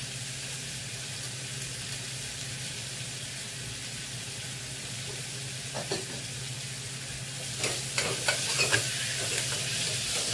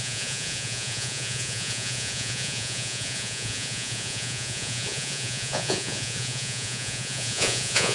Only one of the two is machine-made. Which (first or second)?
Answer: second